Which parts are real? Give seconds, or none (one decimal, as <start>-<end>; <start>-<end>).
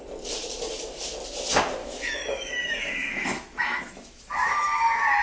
0.0-1.8